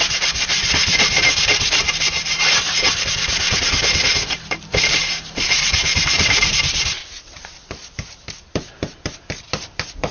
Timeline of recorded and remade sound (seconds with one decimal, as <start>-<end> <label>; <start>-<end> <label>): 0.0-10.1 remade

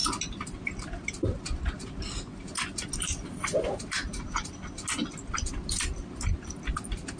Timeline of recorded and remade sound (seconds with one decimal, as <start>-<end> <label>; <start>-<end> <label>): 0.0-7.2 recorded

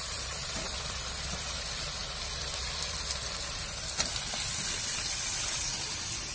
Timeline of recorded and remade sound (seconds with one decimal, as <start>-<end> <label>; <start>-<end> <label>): 0.0-6.3 remade

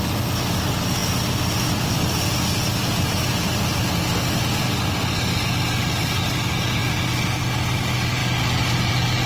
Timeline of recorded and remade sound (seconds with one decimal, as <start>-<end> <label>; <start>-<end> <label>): 0.0-9.3 recorded

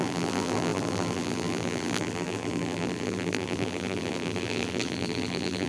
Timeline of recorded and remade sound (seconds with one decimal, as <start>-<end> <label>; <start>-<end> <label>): 0.0-5.7 remade

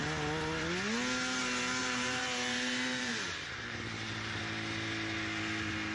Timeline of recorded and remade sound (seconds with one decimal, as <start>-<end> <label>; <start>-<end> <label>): 0.0-1.8 recorded; 1.8-4.4 remade; 4.4-5.9 recorded

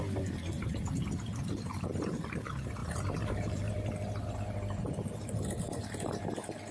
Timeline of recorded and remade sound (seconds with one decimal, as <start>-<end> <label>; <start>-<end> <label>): 0.0-2.8 recorded; 2.8-3.7 remade; 3.7-6.7 recorded